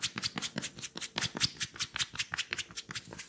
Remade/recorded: recorded